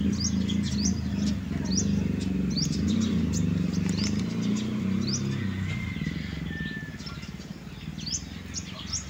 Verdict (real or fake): real